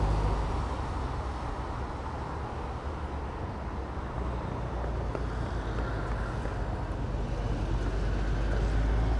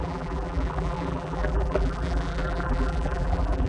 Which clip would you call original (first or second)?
first